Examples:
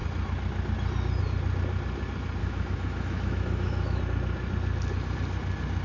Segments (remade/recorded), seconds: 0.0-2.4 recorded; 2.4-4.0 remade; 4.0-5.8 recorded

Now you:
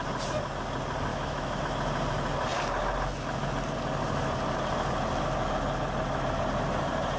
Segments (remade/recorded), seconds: 0.0-1.1 recorded; 1.1-1.6 remade; 1.6-7.2 recorded

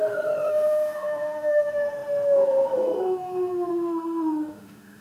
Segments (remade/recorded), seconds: 0.0-5.0 remade

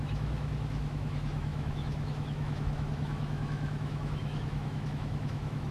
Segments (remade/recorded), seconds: 0.0-5.7 remade

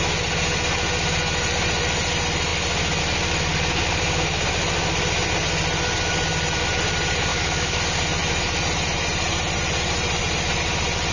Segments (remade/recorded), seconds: 0.0-7.3 recorded; 7.3-7.8 remade; 7.8-11.1 recorded

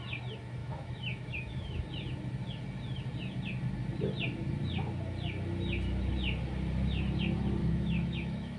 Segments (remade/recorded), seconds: 0.0-0.6 recorded; 0.6-1.8 remade; 1.8-7.6 recorded; 7.6-8.6 remade